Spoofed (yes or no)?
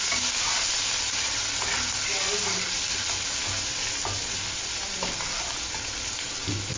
no